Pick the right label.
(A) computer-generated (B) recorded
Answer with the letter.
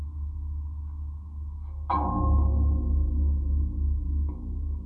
B